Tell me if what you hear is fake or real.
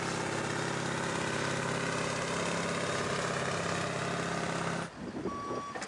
real